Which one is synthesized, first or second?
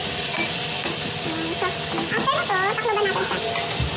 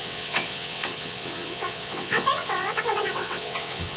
second